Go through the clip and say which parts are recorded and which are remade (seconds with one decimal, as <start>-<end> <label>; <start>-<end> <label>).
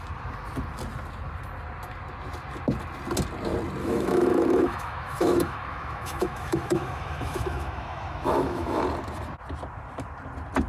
0.0-3.8 recorded; 3.8-8.8 remade; 8.8-10.7 recorded